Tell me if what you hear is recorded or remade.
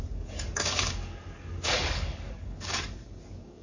remade